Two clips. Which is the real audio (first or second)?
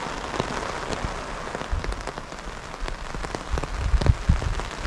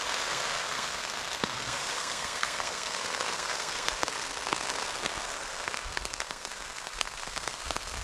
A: first